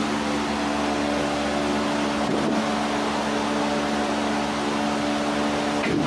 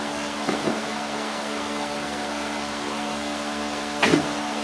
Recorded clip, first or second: first